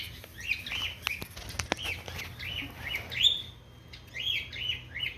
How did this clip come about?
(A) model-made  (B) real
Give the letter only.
B